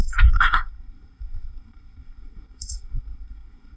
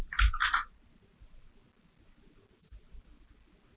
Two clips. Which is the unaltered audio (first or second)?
second